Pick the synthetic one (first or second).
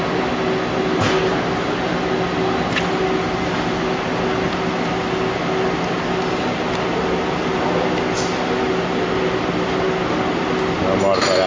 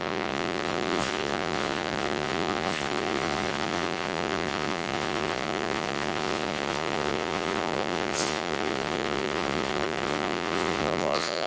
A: second